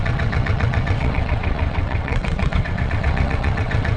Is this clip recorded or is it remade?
remade